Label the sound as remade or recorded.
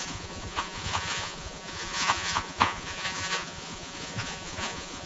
remade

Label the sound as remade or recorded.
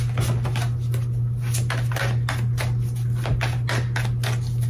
recorded